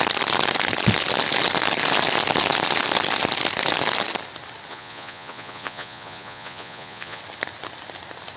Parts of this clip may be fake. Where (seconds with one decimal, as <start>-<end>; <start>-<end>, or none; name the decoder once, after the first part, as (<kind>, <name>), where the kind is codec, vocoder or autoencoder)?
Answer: 4.7-7.2 (vocoder, Vocos)